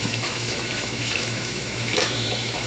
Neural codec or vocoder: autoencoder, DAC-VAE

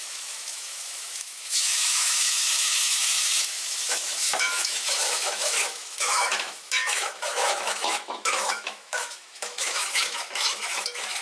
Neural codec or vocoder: autoencoder, DAC-VAE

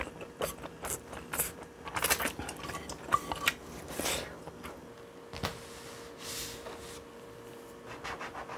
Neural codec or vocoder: none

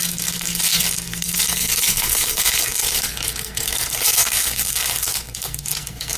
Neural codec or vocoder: codec, SNAC